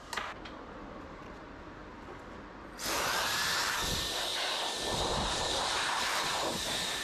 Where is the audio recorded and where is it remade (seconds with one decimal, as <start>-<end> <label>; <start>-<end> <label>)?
0.0-1.8 remade; 1.8-2.6 recorded; 2.6-4.3 remade; 4.3-5.1 recorded; 5.1-7.0 remade